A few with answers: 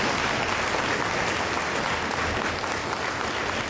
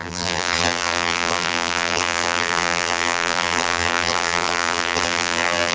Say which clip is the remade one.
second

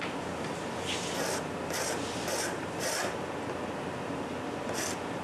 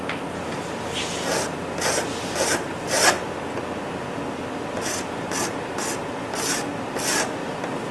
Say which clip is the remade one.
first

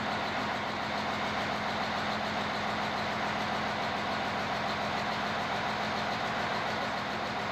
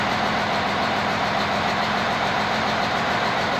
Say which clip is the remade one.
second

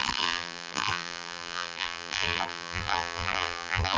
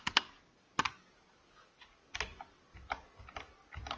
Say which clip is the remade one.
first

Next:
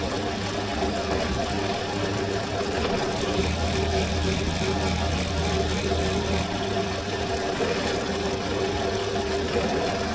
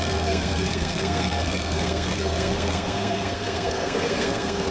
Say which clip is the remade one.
second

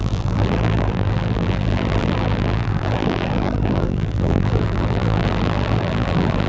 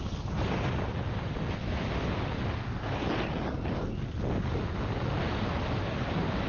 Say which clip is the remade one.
first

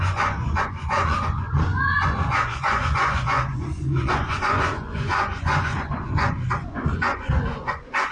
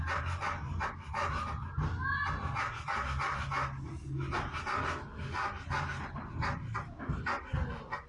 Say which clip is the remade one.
first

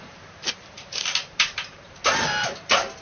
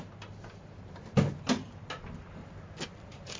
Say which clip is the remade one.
first